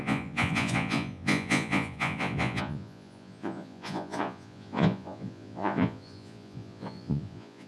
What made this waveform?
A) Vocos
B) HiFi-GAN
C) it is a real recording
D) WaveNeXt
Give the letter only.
A